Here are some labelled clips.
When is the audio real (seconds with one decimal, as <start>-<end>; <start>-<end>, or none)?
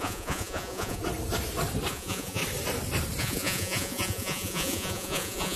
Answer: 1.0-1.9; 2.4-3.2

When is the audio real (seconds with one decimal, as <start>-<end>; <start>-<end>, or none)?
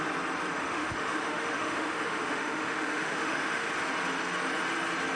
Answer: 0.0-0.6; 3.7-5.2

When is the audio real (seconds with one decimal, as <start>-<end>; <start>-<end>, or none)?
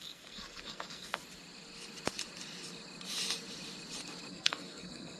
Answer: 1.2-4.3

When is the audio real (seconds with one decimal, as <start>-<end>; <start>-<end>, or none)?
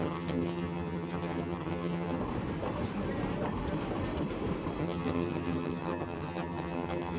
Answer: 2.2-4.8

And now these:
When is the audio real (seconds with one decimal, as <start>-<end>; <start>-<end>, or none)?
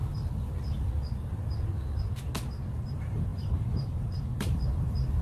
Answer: 0.0-2.9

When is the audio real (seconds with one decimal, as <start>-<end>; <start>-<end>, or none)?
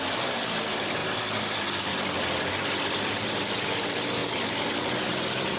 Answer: 1.0-2.9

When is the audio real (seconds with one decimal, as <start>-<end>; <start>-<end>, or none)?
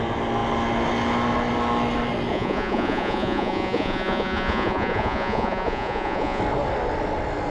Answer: 0.0-2.3; 6.4-7.5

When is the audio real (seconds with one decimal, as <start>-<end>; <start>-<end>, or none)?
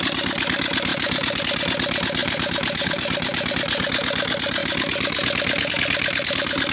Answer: 0.0-0.9; 1.4-2.2; 3.5-6.7